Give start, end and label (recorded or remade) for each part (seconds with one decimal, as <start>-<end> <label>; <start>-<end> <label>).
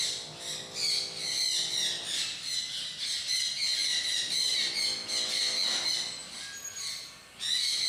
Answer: 0.0-3.9 recorded; 3.9-4.7 remade; 4.7-7.9 recorded